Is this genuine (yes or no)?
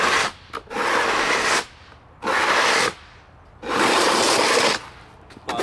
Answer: yes